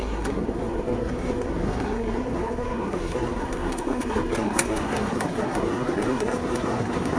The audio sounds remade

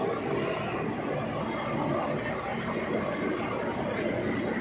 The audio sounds recorded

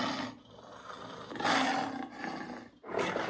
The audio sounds recorded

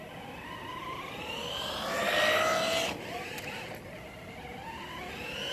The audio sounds recorded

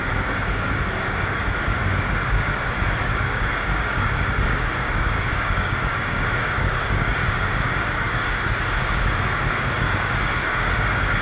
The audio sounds remade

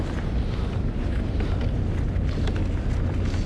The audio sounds recorded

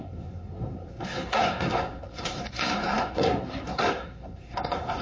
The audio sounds remade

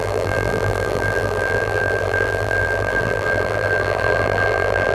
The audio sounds remade